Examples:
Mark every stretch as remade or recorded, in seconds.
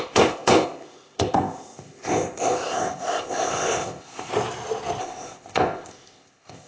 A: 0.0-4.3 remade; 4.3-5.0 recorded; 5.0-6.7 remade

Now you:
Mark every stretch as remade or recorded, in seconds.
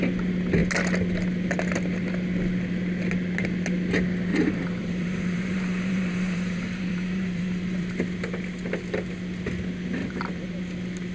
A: 0.0-4.3 recorded; 4.3-8.0 remade; 8.0-10.0 recorded; 10.0-10.6 remade; 10.6-11.1 recorded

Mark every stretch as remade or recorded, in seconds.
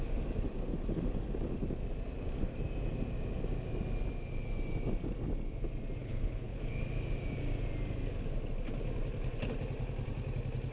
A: 0.0-6.0 recorded; 6.0-6.6 remade; 6.6-10.7 recorded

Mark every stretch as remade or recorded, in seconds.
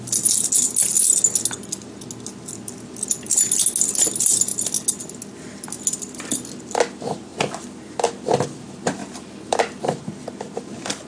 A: 0.0-7.3 recorded; 7.3-8.1 remade; 8.1-9.0 recorded; 9.0-10.0 remade; 10.0-11.1 recorded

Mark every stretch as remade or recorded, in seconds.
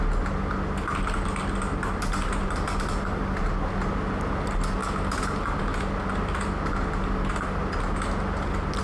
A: 0.0-8.8 recorded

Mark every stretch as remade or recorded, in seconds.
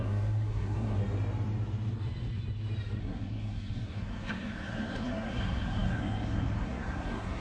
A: 0.0-1.0 remade; 1.0-3.0 recorded; 3.0-7.4 remade